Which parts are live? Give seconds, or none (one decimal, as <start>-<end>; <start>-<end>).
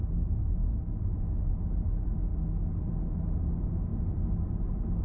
0.0-5.0